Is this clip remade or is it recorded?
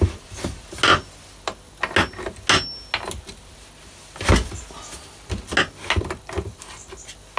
recorded